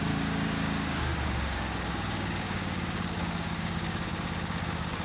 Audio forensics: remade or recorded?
remade